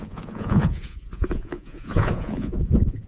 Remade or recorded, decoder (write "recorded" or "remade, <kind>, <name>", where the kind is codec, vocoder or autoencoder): remade, vocoder, Vocos